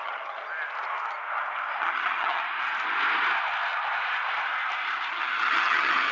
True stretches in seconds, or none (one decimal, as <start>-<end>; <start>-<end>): 0.4-1.8; 2.4-5.1